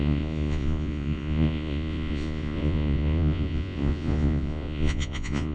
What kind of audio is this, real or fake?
fake